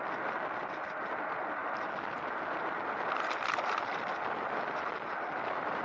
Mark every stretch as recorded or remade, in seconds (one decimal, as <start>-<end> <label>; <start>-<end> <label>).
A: 0.0-5.8 recorded